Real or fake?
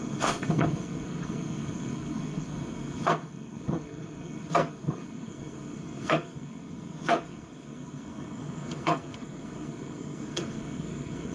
fake